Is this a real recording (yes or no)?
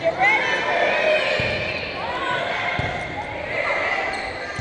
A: yes